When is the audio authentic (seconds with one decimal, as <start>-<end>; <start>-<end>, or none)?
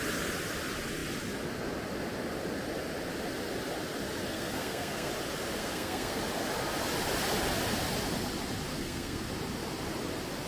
0.0-4.3; 5.1-5.6; 6.2-8.7; 9.2-10.5